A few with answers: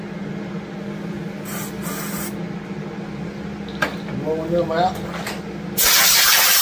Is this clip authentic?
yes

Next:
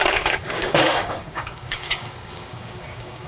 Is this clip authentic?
no